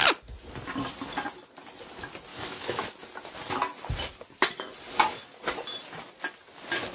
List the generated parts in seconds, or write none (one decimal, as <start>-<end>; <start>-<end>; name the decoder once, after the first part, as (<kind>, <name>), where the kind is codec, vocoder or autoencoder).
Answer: 2.3-2.9 (autoencoder, DAC-VAE)